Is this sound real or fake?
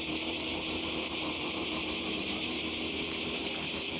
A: fake